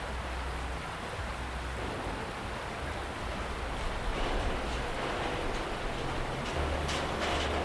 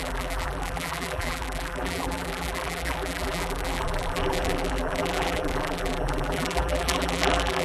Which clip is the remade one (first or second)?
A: second